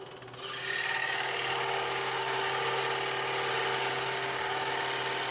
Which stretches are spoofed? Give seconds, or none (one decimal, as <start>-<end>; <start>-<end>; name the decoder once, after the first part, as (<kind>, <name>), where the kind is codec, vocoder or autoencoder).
1.0-2.8 (codec, DAC); 3.7-4.7